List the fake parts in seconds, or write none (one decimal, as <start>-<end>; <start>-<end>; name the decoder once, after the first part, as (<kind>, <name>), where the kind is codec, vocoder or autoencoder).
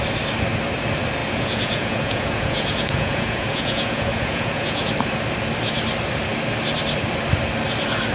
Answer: 1.2-4.9 (vocoder, Vocos)